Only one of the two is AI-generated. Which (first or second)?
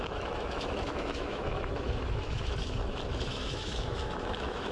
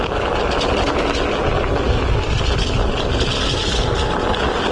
first